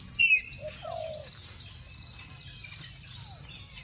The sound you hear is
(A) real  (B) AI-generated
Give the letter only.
A